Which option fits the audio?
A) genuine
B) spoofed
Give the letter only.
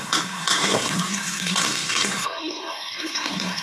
B